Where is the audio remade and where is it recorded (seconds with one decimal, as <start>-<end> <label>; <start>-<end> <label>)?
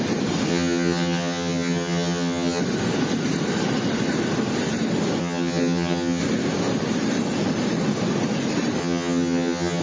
0.0-0.5 recorded; 0.5-2.6 remade; 2.6-5.2 recorded; 5.2-6.2 remade; 6.2-8.8 recorded; 8.8-9.8 remade